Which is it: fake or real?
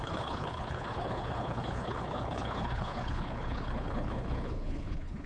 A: fake